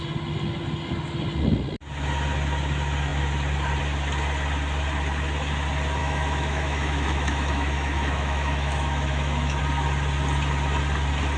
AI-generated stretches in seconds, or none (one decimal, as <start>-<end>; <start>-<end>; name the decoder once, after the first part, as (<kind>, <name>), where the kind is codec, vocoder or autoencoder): 6.0-9.6 (autoencoder, DAC-VAE)